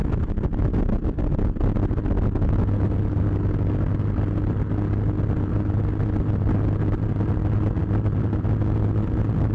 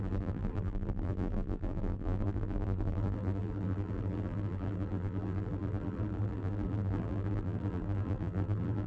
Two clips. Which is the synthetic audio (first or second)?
second